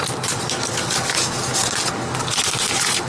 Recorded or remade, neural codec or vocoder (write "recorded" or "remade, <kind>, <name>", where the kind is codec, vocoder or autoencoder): recorded